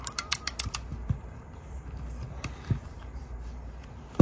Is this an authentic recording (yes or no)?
no